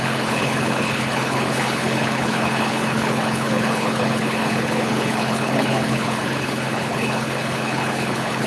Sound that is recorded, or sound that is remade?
remade